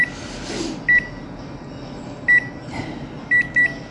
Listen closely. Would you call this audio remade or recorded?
recorded